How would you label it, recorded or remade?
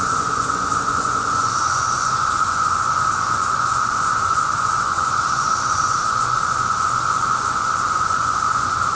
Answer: remade